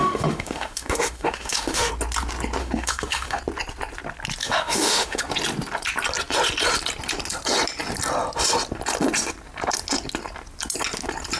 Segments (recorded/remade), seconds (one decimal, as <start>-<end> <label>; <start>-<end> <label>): 0.0-1.9 remade; 1.9-2.6 recorded; 2.6-3.4 remade; 3.4-4.4 recorded; 4.4-5.2 remade; 5.2-11.4 recorded